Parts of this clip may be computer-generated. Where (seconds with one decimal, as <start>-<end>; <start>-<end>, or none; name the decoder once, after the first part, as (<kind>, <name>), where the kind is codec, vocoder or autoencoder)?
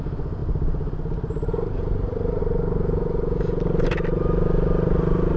none